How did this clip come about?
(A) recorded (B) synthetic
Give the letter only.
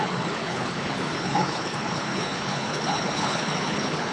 B